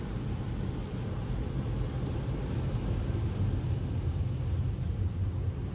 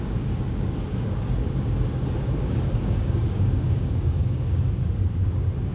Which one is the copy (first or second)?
second